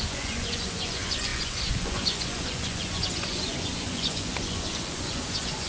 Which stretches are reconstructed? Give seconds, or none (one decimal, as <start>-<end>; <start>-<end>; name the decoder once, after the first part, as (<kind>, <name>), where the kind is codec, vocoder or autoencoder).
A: 0.0-5.7 (vocoder, Vocos)